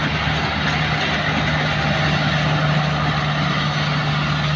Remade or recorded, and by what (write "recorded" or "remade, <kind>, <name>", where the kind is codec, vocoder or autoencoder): recorded